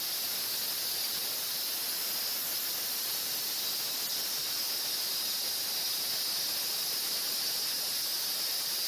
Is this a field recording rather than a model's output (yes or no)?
yes